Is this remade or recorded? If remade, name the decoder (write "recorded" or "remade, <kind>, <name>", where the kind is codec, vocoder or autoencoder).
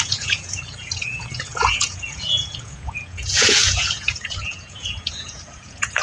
remade, vocoder, Vocos